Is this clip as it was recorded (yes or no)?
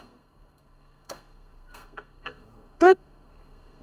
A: no